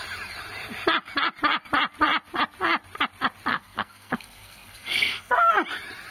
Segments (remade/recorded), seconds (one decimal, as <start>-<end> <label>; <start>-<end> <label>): 0.0-3.5 recorded; 3.5-5.5 remade; 5.5-6.1 recorded